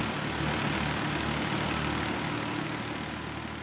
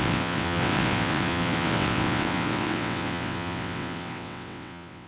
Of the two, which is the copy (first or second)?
second